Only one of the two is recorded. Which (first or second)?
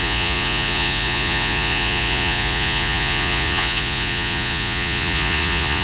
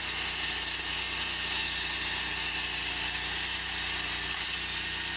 second